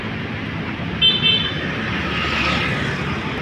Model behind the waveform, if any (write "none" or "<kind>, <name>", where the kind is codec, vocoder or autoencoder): none